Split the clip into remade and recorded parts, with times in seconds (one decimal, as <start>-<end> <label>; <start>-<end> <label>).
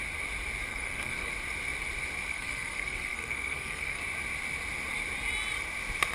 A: 0.0-0.7 recorded; 0.7-1.3 remade; 1.3-2.3 recorded; 2.3-4.0 remade; 4.0-6.1 recorded